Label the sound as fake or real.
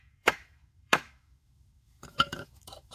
fake